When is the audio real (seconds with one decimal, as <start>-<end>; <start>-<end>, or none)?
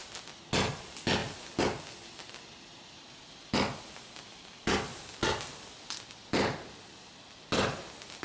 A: 0.0-8.2